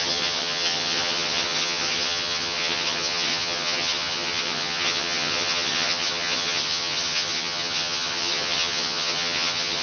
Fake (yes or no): yes